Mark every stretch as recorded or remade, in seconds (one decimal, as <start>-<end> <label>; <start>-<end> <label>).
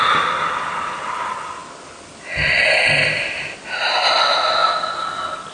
0.0-5.5 recorded